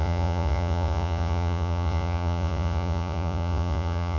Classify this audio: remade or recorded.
remade